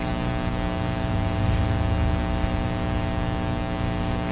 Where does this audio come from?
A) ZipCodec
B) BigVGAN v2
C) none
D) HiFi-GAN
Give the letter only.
C